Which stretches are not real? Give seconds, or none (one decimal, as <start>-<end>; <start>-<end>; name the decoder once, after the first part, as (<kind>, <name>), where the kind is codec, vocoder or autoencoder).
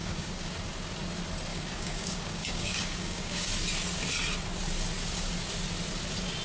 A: 0.0-0.5 (codec, DAC); 1.5-3.5